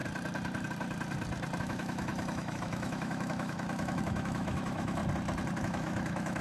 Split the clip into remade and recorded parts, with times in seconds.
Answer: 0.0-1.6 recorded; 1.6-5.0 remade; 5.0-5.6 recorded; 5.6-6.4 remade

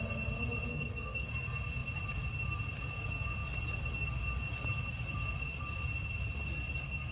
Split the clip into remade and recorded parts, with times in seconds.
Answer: 0.0-0.7 recorded; 0.7-1.3 remade; 1.3-7.1 recorded

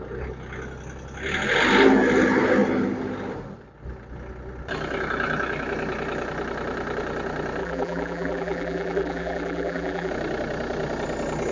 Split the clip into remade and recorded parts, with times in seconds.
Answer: 0.0-7.6 recorded; 7.6-10.1 remade; 10.1-11.5 recorded

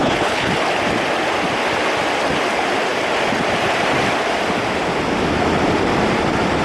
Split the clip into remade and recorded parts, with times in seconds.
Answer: 0.0-0.5 remade; 0.5-6.6 recorded

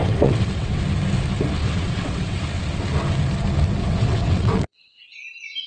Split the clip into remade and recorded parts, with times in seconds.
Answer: 0.0-0.8 remade; 0.8-1.6 recorded; 1.6-2.4 remade; 2.4-3.8 recorded; 3.8-5.0 remade; 5.0-5.7 recorded